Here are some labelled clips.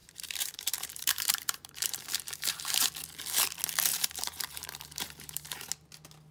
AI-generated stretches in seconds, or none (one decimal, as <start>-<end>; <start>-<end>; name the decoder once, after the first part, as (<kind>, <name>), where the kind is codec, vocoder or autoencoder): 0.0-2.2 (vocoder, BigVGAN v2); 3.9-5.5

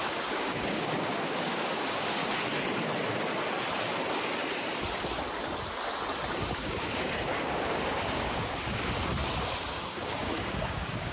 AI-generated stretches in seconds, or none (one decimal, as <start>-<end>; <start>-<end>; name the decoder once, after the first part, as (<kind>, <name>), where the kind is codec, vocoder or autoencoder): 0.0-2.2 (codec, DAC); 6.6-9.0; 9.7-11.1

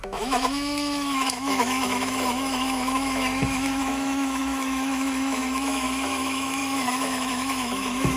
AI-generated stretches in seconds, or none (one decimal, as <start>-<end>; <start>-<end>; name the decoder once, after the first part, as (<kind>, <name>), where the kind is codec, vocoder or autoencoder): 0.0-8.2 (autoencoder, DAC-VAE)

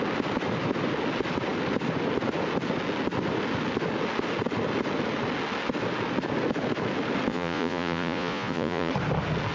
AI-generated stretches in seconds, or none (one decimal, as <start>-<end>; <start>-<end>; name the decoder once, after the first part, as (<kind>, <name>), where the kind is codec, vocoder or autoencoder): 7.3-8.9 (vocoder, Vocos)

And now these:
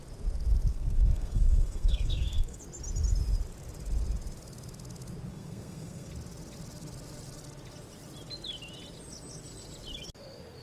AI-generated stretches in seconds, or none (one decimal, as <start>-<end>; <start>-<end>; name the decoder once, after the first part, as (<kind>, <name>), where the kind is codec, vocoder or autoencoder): 0.7-2.6 (codec, SNAC); 5.3-6.1